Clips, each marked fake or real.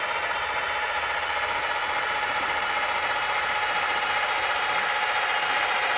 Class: fake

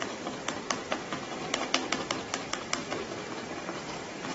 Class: fake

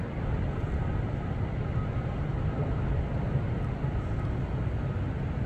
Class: real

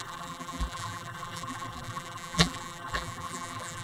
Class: fake